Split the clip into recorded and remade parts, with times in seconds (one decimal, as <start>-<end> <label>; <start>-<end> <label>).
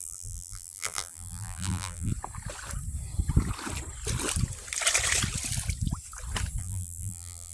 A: 0.0-2.1 remade; 2.1-6.6 recorded; 6.6-7.5 remade